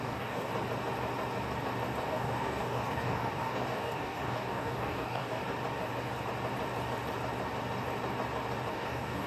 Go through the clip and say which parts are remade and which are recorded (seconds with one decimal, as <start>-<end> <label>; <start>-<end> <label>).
0.0-0.5 remade; 0.5-2.0 recorded; 2.0-5.4 remade; 5.4-8.7 recorded; 8.7-9.3 remade